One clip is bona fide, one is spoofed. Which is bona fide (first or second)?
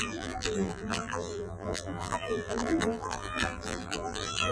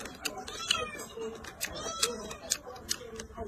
second